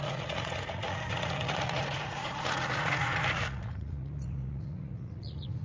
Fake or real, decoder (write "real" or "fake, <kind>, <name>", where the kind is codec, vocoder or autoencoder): fake, vocoder, Vocos